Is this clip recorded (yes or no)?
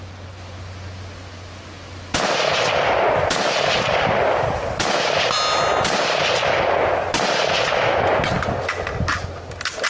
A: yes